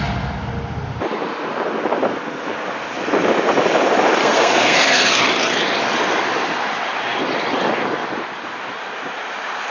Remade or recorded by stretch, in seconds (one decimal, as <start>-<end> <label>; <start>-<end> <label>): 0.0-4.2 recorded; 4.2-5.2 remade; 5.2-9.7 recorded